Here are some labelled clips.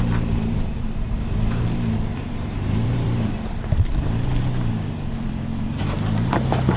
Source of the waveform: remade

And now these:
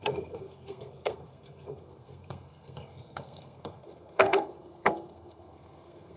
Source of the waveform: remade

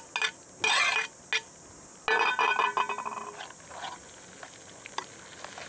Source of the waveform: recorded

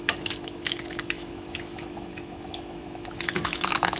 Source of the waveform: remade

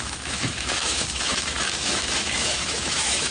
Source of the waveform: remade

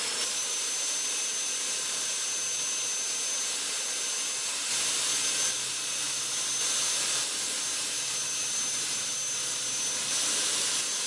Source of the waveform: recorded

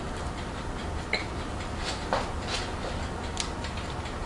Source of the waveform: recorded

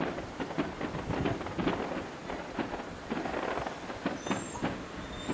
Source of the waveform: recorded